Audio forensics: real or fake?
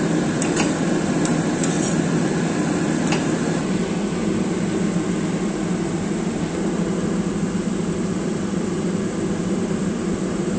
fake